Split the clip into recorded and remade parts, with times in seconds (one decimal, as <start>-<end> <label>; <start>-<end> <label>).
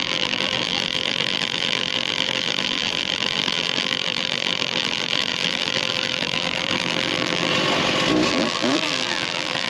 0.0-7.5 remade; 7.5-8.3 recorded; 8.3-9.7 remade